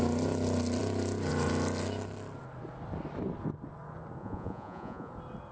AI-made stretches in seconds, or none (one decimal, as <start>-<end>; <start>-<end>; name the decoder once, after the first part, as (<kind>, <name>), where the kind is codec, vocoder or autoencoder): 4.2-5.1 (vocoder, Vocos)